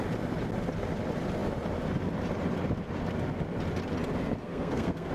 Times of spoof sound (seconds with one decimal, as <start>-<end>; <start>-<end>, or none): 4.4-5.1